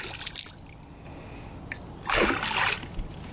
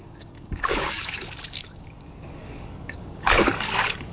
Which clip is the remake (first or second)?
second